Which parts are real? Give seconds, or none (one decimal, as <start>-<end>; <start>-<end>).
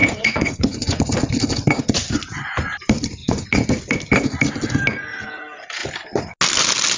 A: 1.1-3.2; 3.7-7.0